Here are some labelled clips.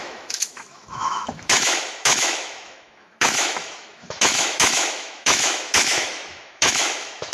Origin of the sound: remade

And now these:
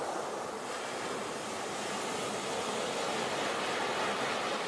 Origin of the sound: recorded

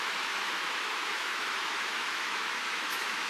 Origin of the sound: remade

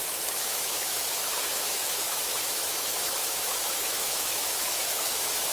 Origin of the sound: remade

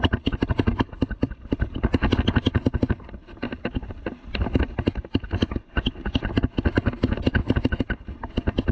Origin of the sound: recorded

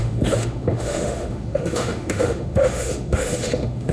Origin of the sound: remade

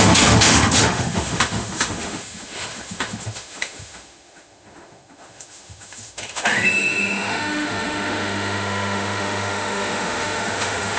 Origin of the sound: remade